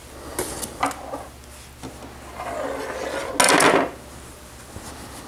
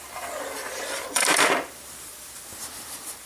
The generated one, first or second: second